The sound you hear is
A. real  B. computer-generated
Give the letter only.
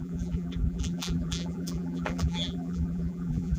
B